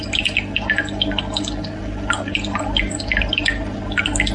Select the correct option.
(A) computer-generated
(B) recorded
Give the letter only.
B